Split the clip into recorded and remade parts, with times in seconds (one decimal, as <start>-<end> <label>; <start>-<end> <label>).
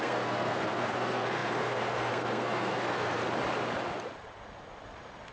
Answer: 0.0-3.2 remade; 3.2-5.3 recorded